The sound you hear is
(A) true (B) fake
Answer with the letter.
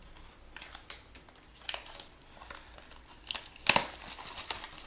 A